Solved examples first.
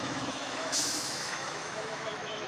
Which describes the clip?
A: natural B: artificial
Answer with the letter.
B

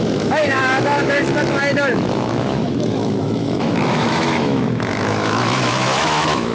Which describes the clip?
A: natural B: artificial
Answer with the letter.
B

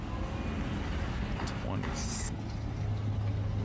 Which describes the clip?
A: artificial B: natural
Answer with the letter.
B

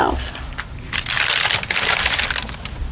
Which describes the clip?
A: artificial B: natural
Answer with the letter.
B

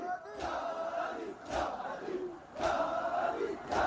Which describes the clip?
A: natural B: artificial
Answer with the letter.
A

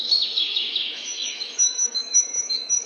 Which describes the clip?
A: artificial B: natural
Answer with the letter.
A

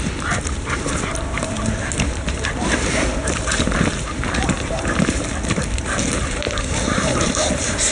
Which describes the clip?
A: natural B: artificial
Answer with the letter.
A